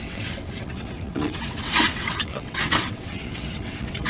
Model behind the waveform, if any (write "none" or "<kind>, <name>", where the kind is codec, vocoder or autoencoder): vocoder, WaveNeXt